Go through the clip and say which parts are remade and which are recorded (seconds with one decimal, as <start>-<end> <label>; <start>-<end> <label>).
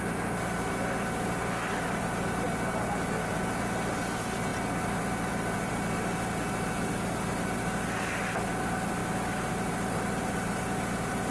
0.0-11.3 recorded